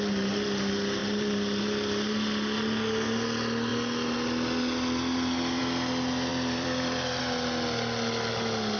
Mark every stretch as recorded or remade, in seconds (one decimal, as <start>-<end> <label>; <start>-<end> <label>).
0.0-1.0 recorded; 1.0-1.6 remade; 1.6-6.3 recorded; 6.3-7.2 remade; 7.2-8.8 recorded